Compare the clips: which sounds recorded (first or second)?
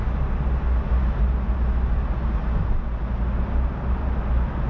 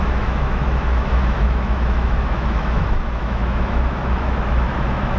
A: first